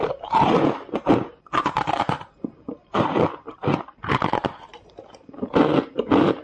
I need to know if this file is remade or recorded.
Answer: remade